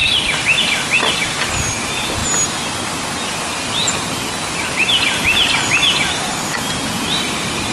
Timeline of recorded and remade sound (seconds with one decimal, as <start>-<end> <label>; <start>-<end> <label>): 0.0-7.7 recorded